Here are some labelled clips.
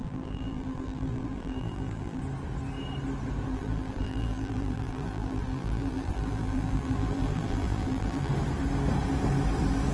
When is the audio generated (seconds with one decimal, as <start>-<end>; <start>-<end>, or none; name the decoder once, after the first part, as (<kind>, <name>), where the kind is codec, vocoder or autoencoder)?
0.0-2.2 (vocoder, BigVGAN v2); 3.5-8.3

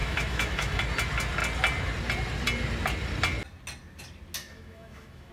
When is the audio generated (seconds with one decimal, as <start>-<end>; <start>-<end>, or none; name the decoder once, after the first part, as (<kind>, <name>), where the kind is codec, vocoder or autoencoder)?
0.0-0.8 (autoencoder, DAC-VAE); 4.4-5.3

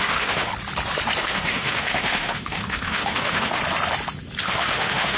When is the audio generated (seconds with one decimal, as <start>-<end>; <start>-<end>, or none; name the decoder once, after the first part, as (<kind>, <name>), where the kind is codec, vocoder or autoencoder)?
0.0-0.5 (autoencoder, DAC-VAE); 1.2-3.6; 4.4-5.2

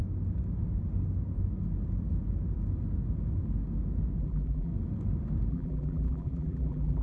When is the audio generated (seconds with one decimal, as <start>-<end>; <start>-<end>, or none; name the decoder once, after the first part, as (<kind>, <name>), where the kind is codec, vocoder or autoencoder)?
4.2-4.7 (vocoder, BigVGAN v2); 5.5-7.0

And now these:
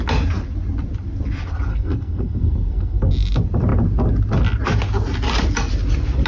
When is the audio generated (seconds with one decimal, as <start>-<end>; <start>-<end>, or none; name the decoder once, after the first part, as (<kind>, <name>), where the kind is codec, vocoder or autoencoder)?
1.7-3.1 (codec, SNAC)

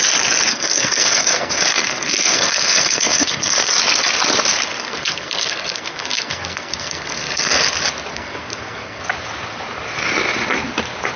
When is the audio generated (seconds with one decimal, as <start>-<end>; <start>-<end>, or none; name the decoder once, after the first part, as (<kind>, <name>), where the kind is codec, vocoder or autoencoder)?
0.5-3.7 (codec, SNAC); 4.8-7.6; 8.1-9.0

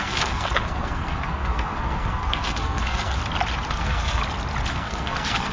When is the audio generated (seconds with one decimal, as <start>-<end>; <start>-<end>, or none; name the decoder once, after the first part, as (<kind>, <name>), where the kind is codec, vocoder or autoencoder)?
0.0-3.2 (codec, SNAC); 3.7-4.2; 4.7-5.5

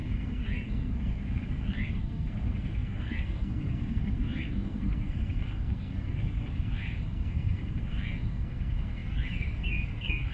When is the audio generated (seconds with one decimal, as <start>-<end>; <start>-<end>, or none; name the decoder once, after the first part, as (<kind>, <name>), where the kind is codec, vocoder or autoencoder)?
0.0-10.3 (codec, SNAC)